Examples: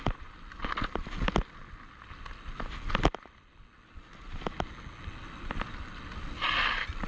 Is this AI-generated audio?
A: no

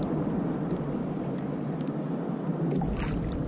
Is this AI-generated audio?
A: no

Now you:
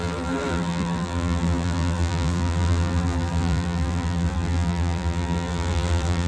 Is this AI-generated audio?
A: yes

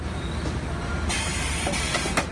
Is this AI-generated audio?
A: no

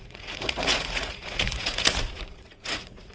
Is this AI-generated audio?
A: yes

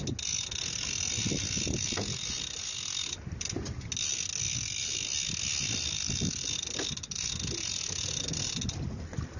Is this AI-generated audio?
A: no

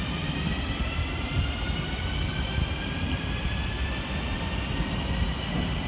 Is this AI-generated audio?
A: no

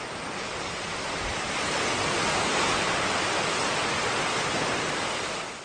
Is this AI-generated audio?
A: no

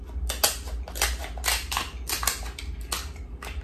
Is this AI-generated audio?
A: no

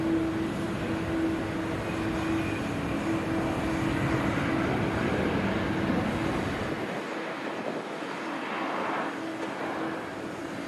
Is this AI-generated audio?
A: no